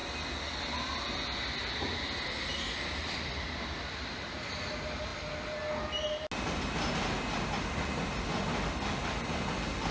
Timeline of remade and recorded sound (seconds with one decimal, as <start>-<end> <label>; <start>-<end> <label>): 0.0-9.9 recorded